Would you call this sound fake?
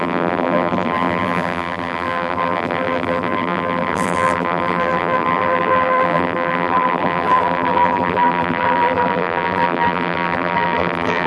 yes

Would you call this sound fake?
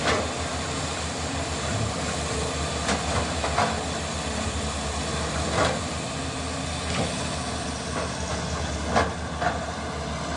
no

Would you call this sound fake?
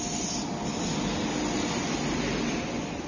no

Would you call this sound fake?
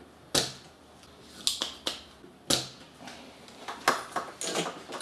no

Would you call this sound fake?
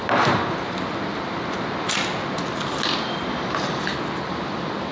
no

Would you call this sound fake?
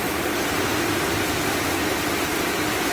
no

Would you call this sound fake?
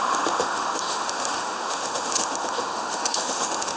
yes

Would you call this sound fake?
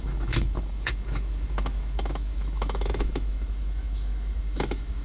yes